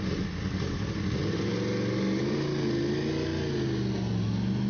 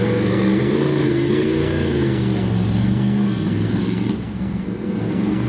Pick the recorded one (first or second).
first